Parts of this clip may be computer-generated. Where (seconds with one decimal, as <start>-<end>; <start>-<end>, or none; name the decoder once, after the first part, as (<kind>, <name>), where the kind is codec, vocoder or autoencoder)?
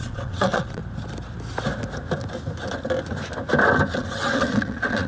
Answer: 0.0-0.8 (vocoder, WaveNeXt); 3.9-5.1